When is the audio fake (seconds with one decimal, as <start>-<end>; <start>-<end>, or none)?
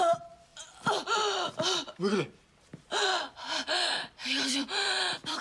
0.5-2.0; 2.7-5.4